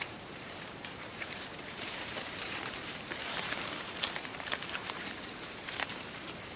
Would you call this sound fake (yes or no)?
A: yes